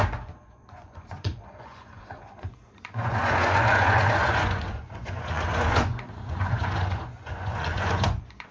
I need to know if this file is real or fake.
fake